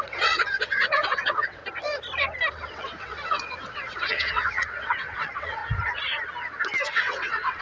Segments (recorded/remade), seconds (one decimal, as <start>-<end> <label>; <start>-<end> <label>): 0.0-1.6 remade; 1.6-2.5 recorded; 2.5-5.6 remade; 5.6-6.9 recorded; 6.9-7.6 remade

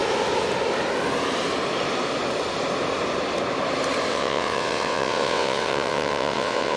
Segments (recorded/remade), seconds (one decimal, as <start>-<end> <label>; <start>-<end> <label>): 0.0-4.1 recorded; 4.1-6.8 remade

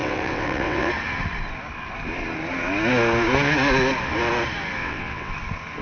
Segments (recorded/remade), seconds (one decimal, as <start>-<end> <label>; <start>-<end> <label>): 0.0-0.9 remade; 0.9-4.8 recorded; 4.8-5.3 remade; 5.3-5.8 recorded

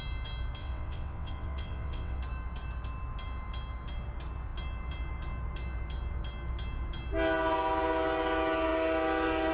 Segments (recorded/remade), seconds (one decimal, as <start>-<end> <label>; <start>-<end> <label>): 0.0-0.6 recorded; 0.6-2.2 remade; 2.2-9.5 recorded

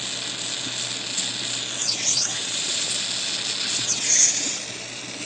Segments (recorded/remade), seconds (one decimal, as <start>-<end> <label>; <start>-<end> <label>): 0.0-1.8 recorded; 1.8-2.9 remade; 2.9-3.7 recorded; 3.7-4.6 remade; 4.6-5.3 recorded

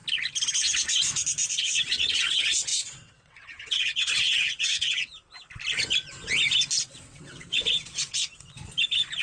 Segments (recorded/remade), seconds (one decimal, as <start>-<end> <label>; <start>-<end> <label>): 0.0-1.5 recorded; 1.5-5.1 remade; 5.1-6.8 recorded; 6.8-8.2 remade; 8.2-9.2 recorded

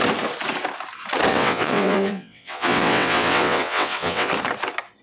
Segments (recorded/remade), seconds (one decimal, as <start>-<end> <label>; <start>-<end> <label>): 0.0-1.3 recorded; 1.3-4.3 remade; 4.3-5.0 recorded

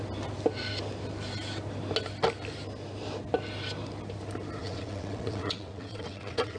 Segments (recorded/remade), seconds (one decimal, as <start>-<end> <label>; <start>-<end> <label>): 0.0-4.6 recorded; 4.6-6.6 remade